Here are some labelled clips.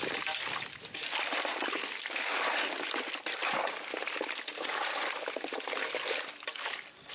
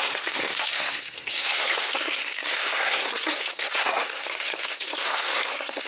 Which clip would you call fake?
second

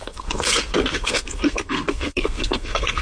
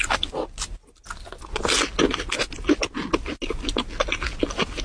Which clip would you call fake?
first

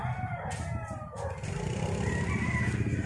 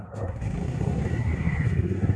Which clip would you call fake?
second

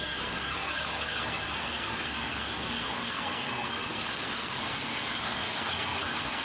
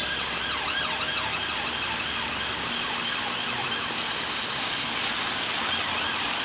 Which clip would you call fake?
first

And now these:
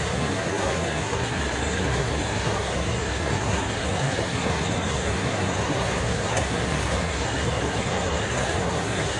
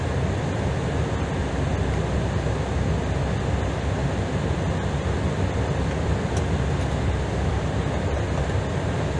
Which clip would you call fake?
first